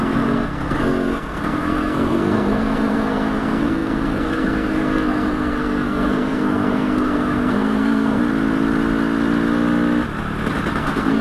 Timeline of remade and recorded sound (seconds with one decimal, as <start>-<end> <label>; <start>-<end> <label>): 0.0-8.2 remade; 8.2-10.7 recorded; 10.7-11.2 remade